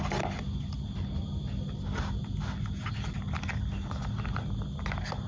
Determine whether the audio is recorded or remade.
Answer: recorded